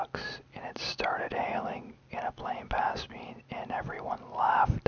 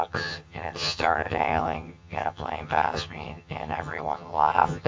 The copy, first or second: second